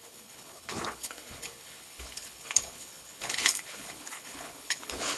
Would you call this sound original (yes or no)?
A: no